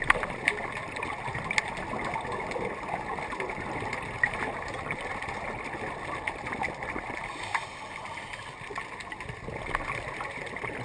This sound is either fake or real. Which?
real